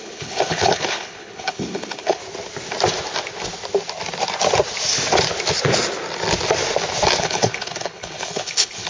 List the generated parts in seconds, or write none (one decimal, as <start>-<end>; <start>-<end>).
0.0-2.2; 7.2-8.9